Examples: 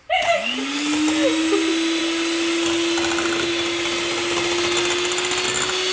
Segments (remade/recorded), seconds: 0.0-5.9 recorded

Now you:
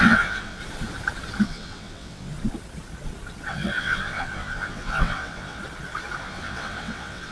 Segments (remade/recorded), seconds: 0.0-0.6 remade; 0.6-1.4 recorded; 1.4-2.3 remade; 2.3-3.5 recorded; 3.5-5.6 remade; 5.6-6.2 recorded; 6.2-7.3 remade

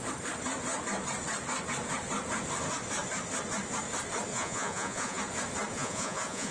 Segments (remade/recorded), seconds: 0.0-4.3 recorded; 4.3-5.2 remade; 5.2-5.7 recorded; 5.7-6.5 remade

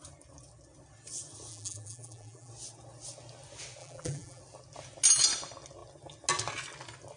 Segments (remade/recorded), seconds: 0.0-1.5 recorded; 1.5-2.5 remade; 2.5-3.8 recorded; 3.8-4.4 remade; 4.4-7.2 recorded